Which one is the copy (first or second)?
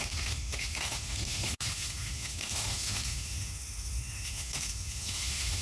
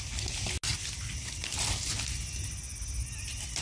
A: first